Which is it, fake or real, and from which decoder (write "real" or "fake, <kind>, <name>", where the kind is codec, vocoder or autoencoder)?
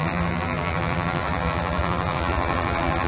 fake, vocoder, BigVGAN v2